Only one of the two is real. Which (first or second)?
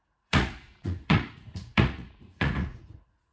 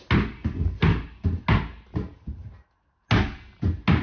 second